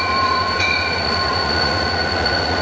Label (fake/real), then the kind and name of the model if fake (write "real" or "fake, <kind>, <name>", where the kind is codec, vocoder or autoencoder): fake, vocoder, Vocos